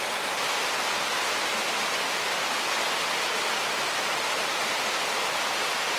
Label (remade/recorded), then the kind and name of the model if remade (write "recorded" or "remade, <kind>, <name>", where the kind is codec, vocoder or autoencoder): recorded